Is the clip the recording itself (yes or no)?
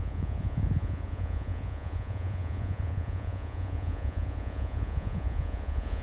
no